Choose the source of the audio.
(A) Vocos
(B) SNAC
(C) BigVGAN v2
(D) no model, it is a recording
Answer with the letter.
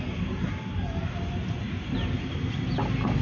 D